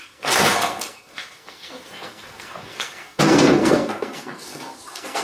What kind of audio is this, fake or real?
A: fake